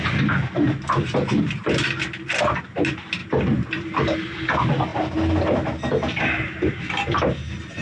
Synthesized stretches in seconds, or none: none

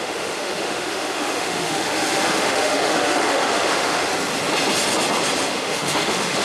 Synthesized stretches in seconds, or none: 0.0-4.1; 5.5-6.4

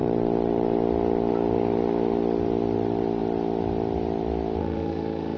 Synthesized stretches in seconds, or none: 4.6-5.4

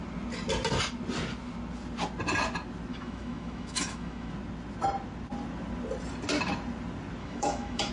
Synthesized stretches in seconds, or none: 2.9-4.3; 7.2-7.9

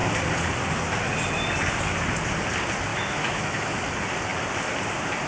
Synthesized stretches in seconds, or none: 2.9-3.7

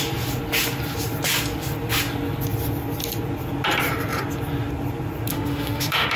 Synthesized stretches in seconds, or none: 5.3-6.2

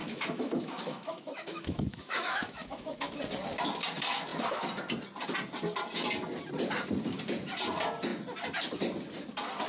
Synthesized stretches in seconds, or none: 0.0-3.1